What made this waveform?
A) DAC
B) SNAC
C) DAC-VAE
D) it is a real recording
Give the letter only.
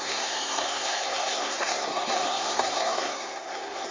B